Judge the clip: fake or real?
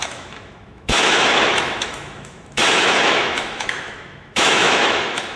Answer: fake